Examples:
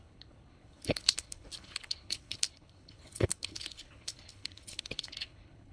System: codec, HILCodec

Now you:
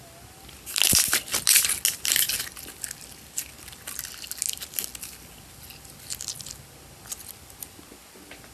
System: none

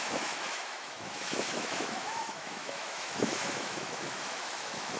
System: autoencoder, DAC-VAE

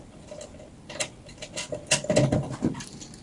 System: none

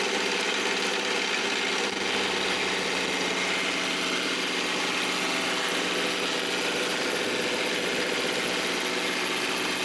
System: none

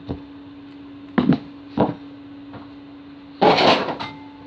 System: none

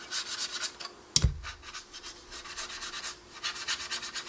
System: none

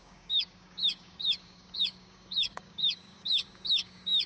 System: codec, DAC